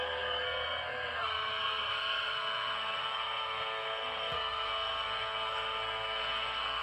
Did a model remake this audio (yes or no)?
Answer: yes